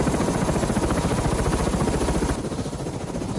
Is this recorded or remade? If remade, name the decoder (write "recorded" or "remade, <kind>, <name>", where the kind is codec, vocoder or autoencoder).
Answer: recorded